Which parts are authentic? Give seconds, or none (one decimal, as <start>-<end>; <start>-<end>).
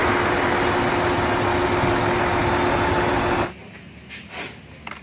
0.0-5.0